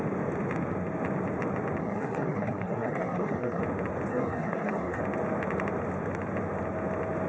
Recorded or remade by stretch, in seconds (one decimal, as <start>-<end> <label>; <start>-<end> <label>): 0.0-1.8 recorded; 1.8-3.6 remade; 3.6-4.1 recorded; 4.1-5.0 remade; 5.0-7.3 recorded